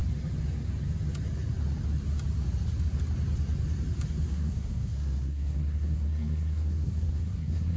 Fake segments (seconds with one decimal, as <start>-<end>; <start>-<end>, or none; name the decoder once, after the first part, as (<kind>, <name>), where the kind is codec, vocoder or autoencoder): 4.3-7.8 (codec, SNAC)